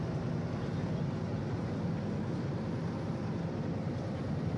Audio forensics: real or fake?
real